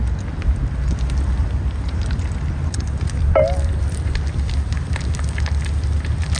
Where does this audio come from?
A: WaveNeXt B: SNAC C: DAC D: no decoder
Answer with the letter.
D